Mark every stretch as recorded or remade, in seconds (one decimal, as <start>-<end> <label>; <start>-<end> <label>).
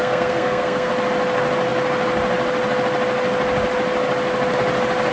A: 0.0-0.9 remade; 0.9-5.1 recorded